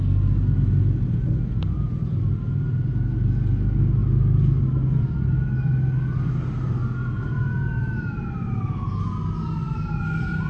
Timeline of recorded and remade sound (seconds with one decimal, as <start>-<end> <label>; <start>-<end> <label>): 0.0-10.5 recorded